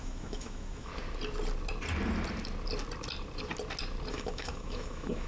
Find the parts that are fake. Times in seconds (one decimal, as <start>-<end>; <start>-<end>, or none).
0.0-0.9; 4.1-5.3